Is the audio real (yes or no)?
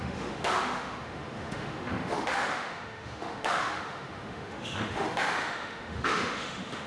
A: no